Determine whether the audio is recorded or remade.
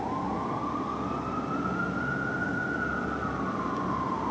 recorded